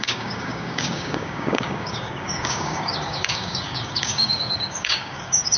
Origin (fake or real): fake